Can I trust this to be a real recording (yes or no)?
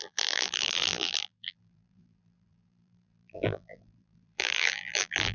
no